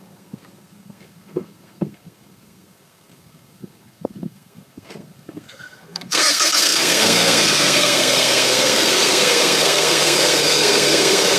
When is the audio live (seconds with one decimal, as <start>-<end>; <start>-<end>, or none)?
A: none